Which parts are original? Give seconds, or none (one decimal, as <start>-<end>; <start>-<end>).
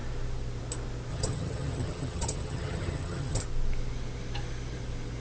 0.0-1.1; 3.4-5.2